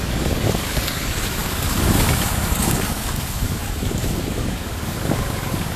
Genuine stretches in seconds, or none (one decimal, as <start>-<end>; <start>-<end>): none